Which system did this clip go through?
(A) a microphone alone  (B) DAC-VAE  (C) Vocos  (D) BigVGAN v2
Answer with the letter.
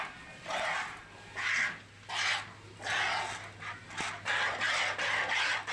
A